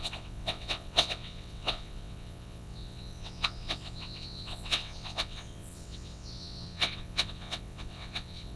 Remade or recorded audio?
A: remade